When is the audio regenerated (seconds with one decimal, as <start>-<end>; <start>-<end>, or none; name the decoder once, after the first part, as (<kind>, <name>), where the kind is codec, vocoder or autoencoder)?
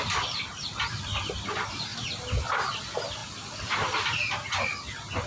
none